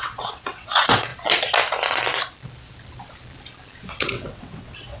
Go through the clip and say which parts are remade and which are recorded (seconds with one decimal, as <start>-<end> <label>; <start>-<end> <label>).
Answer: 0.0-1.1 remade; 1.1-3.9 recorded; 3.9-5.0 remade